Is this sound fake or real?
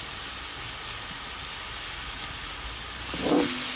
real